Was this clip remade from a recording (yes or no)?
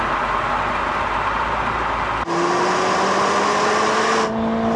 no